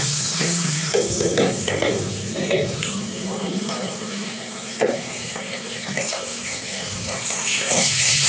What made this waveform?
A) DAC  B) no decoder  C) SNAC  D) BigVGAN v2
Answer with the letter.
C